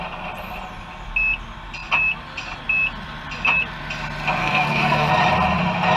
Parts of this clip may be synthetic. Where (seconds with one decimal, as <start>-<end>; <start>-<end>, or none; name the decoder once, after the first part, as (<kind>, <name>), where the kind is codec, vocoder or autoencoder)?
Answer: 4.4-5.1 (codec, SNAC)